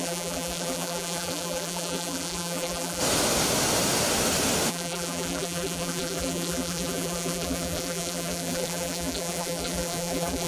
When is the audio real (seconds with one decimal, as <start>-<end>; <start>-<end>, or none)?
3.0-4.7